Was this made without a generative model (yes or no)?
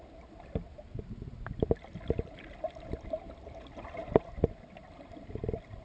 yes